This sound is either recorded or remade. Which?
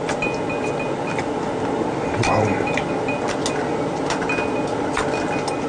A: recorded